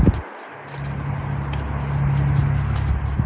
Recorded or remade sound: recorded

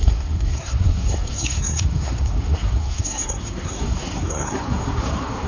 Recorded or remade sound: remade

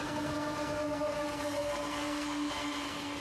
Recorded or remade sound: remade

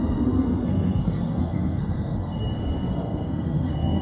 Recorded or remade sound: remade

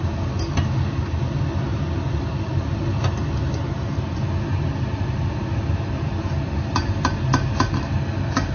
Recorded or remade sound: recorded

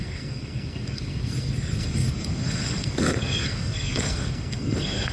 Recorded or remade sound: remade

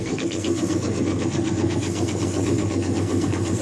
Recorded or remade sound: remade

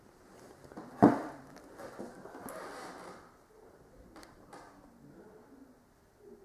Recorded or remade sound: recorded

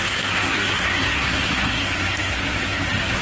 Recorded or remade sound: remade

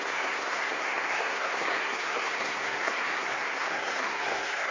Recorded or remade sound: remade